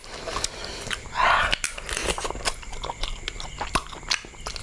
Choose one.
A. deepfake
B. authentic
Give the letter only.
B